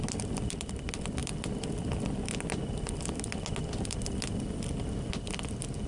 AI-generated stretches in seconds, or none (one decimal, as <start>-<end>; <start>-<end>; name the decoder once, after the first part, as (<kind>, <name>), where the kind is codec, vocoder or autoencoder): none